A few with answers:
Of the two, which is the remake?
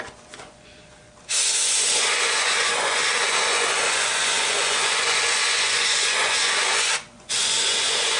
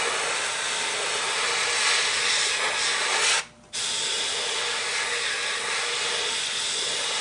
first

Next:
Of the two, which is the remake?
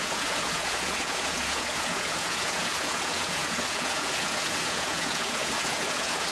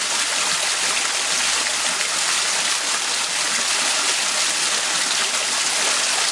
first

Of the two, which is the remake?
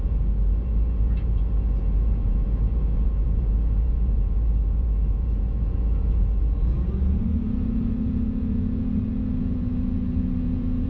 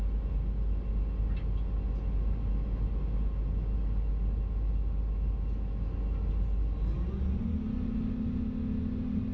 first